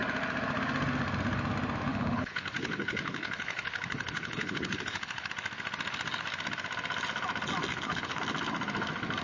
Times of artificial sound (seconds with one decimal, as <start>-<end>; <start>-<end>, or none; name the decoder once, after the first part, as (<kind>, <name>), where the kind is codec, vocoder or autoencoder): 1.9-5.3 (codec, HILCodec); 7.7-8.2